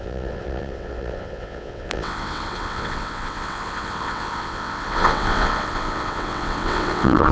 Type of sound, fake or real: fake